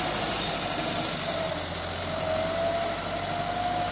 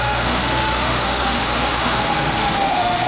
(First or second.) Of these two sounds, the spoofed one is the second